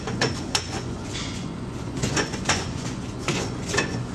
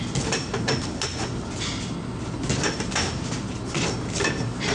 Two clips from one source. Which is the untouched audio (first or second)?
second